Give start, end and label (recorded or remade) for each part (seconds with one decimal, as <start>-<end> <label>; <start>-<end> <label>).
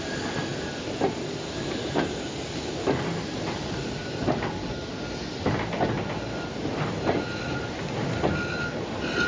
0.0-9.3 recorded